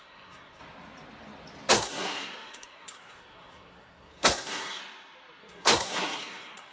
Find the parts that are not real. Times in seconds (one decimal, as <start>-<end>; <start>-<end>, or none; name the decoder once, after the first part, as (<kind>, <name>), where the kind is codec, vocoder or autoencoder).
0.0-0.6 (codec, SNAC); 1.7-4.8; 5.4-6.7